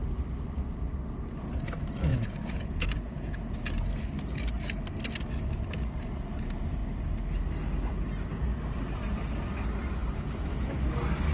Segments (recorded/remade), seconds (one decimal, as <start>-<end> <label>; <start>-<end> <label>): 0.0-2.1 recorded; 2.1-3.5 remade; 3.5-11.3 recorded